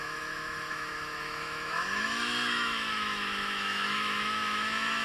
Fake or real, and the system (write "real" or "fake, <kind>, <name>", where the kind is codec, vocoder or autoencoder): fake, autoencoder, DAC-VAE